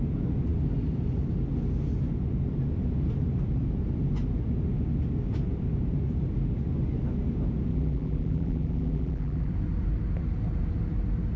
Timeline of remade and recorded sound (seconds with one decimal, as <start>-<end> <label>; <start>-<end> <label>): 0.0-7.7 recorded; 7.7-9.5 remade; 9.5-11.4 recorded